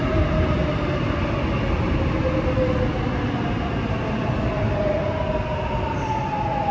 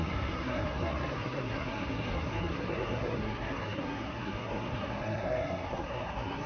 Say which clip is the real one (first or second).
first